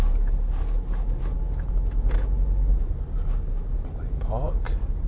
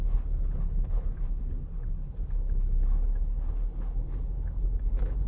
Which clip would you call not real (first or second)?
second